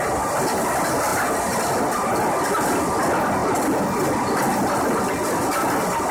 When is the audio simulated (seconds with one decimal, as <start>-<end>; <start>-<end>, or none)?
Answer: none